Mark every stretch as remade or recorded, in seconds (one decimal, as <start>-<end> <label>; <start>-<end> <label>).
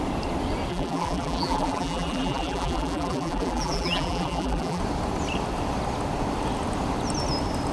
0.0-0.7 recorded; 0.7-4.8 remade; 4.8-7.7 recorded